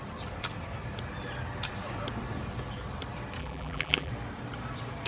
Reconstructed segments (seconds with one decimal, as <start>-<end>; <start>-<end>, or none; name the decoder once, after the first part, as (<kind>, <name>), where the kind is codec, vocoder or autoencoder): 3.4-4.1 (vocoder, BigVGAN v2)